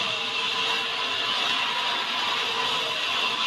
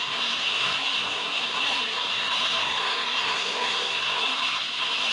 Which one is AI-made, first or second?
second